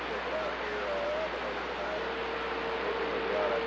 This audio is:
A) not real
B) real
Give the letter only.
B